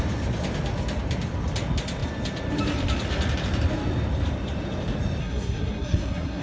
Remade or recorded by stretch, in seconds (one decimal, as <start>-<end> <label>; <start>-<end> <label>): 0.0-5.2 recorded; 5.2-6.4 remade